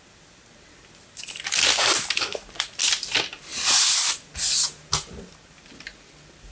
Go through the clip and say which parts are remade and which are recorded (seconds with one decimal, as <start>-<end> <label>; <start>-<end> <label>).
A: 0.0-6.5 recorded